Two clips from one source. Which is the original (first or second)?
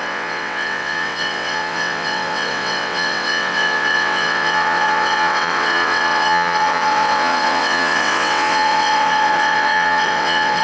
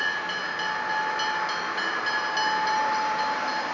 second